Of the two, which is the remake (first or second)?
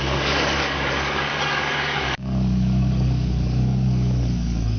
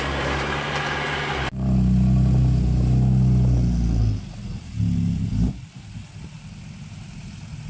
first